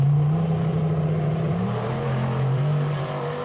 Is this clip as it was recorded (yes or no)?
no